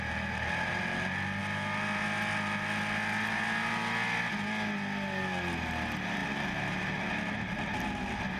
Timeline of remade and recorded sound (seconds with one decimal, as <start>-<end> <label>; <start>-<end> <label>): 0.0-8.4 recorded